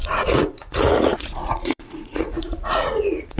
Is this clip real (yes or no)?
no